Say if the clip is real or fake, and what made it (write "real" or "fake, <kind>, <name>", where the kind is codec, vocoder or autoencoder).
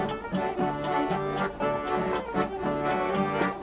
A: real